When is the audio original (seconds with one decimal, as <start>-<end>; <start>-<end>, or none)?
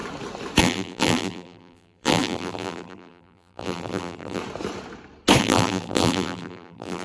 0.0-0.6; 4.4-5.4